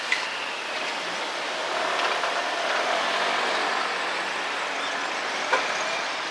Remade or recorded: recorded